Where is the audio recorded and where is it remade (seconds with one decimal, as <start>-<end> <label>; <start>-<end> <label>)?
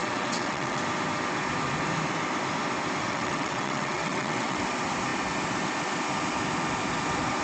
0.0-0.8 remade; 0.8-3.0 recorded; 3.0-4.6 remade; 4.6-7.4 recorded